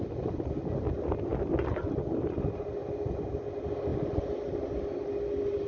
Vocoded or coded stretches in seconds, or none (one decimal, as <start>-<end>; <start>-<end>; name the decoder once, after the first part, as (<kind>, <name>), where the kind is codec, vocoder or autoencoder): none